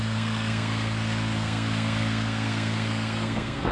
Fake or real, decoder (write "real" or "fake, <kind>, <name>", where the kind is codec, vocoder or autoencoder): fake, codec, SNAC